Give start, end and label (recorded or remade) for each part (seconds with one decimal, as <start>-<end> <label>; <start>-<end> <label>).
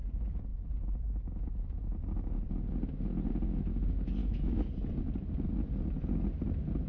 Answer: 0.0-4.2 recorded; 4.2-4.7 remade; 4.7-6.9 recorded